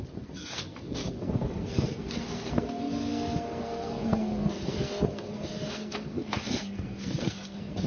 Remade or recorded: remade